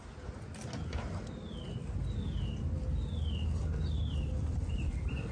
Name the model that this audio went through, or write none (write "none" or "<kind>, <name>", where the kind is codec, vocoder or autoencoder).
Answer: none